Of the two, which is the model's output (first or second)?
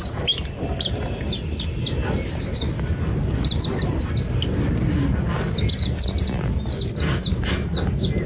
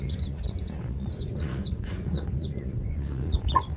second